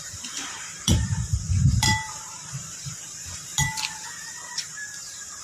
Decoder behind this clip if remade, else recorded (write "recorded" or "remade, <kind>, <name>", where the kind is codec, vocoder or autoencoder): remade, vocoder, BigVGAN v2